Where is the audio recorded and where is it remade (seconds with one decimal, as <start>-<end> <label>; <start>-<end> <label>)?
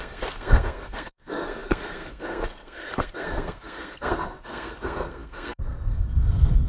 0.0-6.7 remade